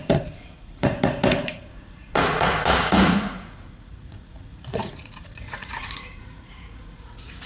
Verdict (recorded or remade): remade